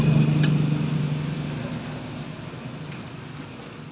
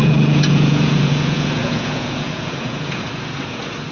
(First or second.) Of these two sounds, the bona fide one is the first